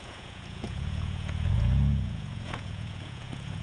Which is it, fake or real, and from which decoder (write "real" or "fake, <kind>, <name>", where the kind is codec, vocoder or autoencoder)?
fake, vocoder, Vocos